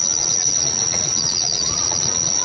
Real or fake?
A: fake